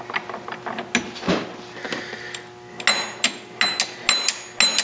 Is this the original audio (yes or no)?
yes